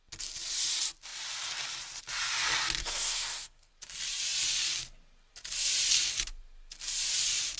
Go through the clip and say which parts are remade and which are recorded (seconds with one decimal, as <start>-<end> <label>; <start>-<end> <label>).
0.0-2.8 recorded; 2.8-3.7 remade; 3.7-7.6 recorded